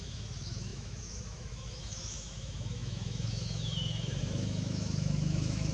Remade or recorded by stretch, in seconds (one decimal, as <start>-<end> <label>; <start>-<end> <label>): 0.0-5.7 remade